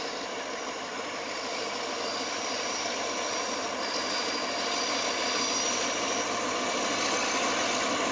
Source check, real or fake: real